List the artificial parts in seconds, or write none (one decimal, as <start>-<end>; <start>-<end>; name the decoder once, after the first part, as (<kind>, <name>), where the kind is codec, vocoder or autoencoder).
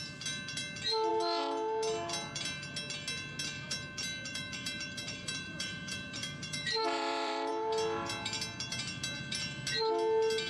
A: 4.3-7.5 (vocoder, BigVGAN v2)